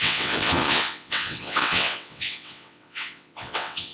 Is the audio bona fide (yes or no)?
no